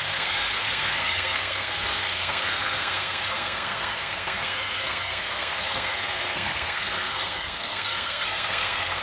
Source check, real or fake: fake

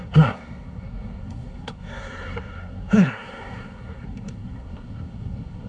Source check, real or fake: fake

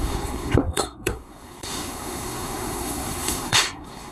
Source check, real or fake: fake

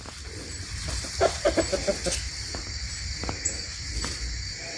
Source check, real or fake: real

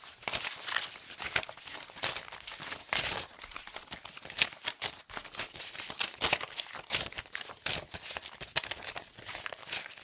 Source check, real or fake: real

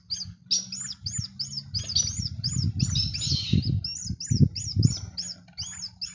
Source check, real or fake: real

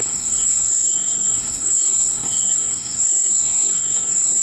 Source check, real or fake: fake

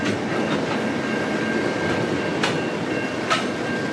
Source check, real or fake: real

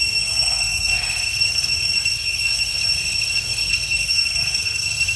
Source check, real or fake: fake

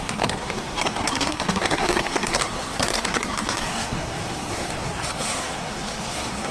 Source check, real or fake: fake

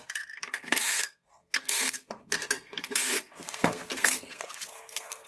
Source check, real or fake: fake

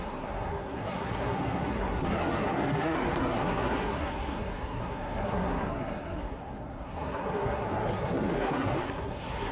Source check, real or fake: fake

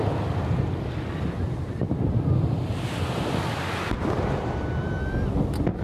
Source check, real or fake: real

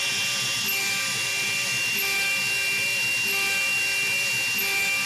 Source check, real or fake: real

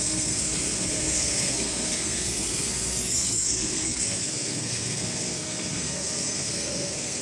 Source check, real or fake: fake